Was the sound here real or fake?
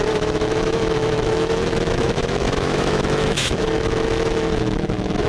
fake